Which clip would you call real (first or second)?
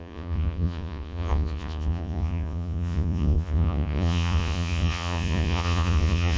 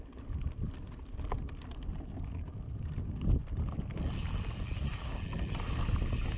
second